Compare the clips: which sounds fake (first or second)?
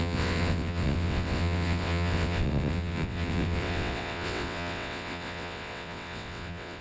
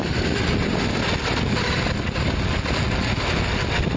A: first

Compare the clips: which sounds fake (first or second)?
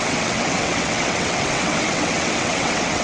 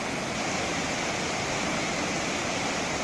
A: first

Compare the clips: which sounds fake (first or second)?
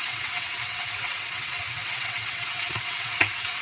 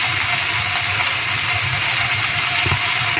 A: first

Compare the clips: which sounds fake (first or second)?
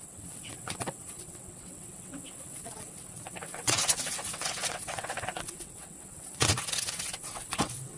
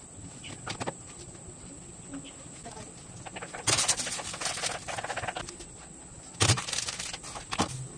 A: first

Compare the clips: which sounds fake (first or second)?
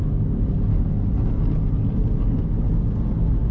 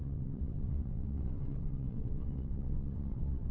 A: second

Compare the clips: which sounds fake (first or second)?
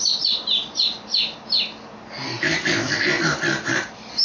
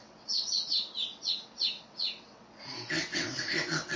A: second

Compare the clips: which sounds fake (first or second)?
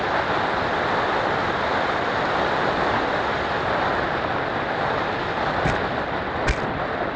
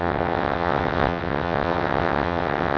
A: second